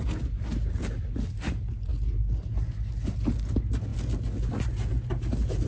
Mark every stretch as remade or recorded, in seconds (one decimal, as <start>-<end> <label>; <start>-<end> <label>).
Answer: 0.0-5.7 recorded